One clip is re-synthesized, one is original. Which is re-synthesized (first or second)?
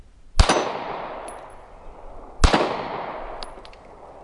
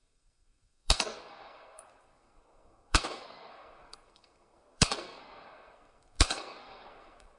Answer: second